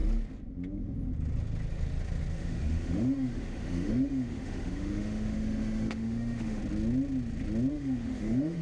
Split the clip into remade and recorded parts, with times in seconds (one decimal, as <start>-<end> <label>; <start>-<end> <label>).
0.0-2.3 recorded; 2.3-6.6 remade; 6.6-7.7 recorded; 7.7-8.6 remade